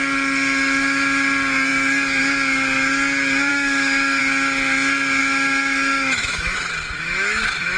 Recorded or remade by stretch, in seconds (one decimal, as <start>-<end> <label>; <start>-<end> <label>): 0.0-3.5 recorded; 3.5-4.2 remade; 4.2-5.2 recorded; 5.2-7.8 remade